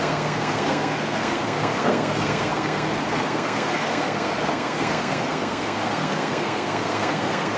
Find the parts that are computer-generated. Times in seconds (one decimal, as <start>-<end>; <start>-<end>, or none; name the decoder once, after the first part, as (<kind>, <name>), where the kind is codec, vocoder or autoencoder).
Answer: 0.0-7.6 (codec, SNAC)